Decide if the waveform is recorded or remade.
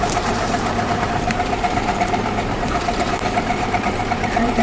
remade